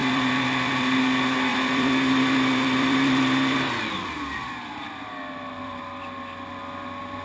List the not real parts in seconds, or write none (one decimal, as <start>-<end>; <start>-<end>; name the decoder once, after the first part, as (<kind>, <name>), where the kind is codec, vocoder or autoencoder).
0.0-1.0 (vocoder, BigVGAN v2); 1.5-5.8